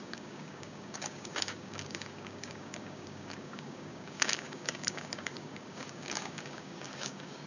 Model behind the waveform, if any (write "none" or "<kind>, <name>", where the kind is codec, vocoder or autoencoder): codec, DAC